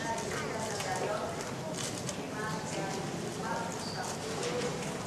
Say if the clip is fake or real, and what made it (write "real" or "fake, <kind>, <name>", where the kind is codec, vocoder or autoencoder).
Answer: real